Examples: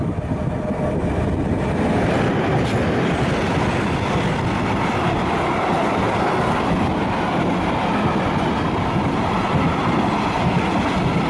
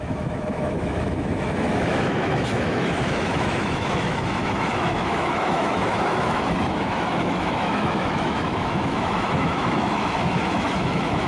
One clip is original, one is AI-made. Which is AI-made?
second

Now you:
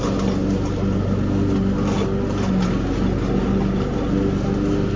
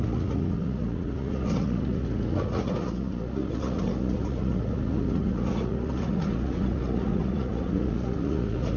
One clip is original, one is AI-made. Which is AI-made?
second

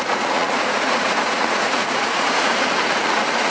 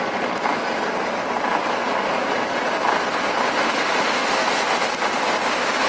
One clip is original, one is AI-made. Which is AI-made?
first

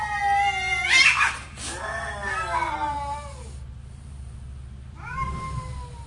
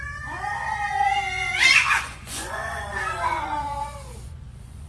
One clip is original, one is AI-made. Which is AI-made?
second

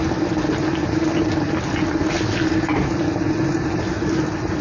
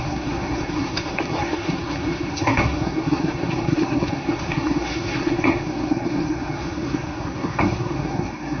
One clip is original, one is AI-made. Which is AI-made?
second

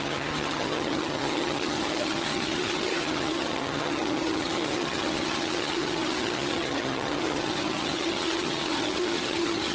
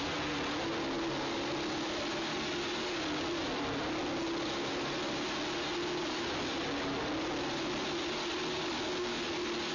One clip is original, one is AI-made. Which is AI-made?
first